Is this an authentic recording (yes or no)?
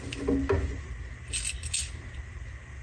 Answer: yes